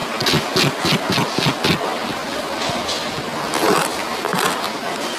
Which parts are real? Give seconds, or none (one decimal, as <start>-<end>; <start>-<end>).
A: 0.0-5.2